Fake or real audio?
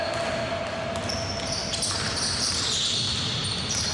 real